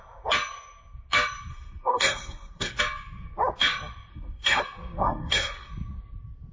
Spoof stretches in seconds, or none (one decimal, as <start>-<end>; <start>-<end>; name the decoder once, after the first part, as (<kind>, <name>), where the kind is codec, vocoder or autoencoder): 1.5-2.8 (codec, SNAC); 4.1-4.6; 5.0-5.7